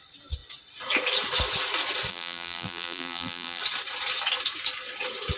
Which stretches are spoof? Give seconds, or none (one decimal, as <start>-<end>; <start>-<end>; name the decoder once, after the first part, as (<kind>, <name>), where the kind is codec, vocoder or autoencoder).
2.1-3.6 (vocoder, BigVGAN v2)